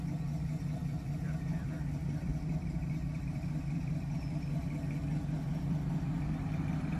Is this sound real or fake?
fake